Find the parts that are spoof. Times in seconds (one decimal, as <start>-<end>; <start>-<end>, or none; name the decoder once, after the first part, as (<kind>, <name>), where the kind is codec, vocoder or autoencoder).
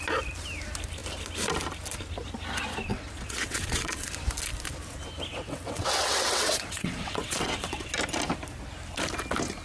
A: 2.9-4.1 (vocoder, WaveNeXt); 5.3-7.9